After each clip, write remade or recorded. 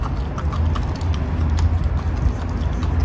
recorded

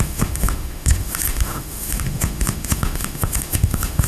remade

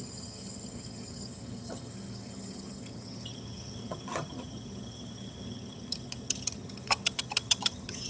remade